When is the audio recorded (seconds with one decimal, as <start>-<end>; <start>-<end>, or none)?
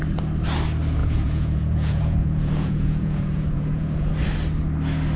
0.0-1.0; 4.1-5.2